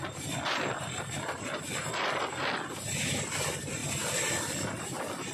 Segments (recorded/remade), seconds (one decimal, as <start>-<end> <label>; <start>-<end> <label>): 0.0-5.3 recorded

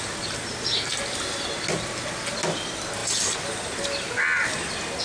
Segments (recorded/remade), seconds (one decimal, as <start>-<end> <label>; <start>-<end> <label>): 0.0-5.0 recorded

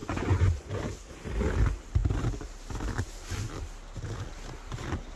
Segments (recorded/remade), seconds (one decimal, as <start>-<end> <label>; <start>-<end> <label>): 0.0-0.7 remade; 0.7-5.2 recorded

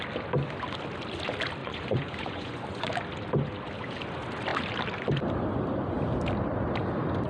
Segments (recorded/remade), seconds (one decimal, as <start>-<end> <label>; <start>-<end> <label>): 0.0-1.6 recorded; 1.6-2.9 remade; 2.9-7.3 recorded

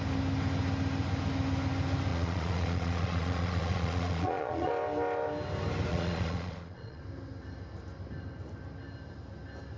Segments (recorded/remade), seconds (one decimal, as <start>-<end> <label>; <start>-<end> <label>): 0.0-2.1 recorded; 2.1-4.7 remade; 4.7-5.9 recorded; 5.9-7.0 remade; 7.0-9.8 recorded

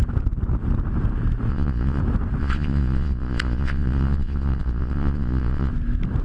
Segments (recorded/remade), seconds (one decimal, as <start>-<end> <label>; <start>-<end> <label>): 0.0-1.5 recorded; 1.5-2.0 remade; 2.0-2.4 recorded; 2.4-5.7 remade; 5.7-6.2 recorded

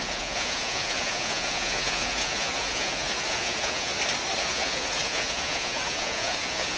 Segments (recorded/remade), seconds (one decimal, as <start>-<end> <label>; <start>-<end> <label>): 0.0-3.9 remade; 3.9-4.4 recorded; 4.4-6.8 remade

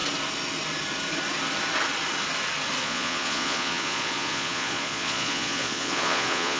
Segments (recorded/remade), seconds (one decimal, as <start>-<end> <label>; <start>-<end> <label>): 0.0-2.8 recorded; 2.8-6.6 remade